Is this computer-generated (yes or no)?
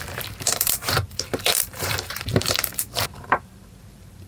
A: yes